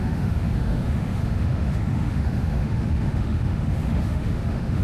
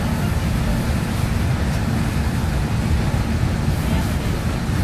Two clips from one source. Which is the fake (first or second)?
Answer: first